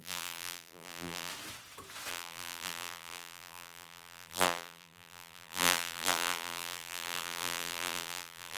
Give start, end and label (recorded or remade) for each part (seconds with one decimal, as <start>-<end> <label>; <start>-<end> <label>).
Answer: 0.0-1.3 remade; 1.3-2.1 recorded; 2.1-8.6 remade